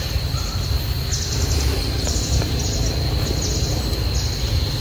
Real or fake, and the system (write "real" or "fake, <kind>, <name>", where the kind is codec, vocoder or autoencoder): real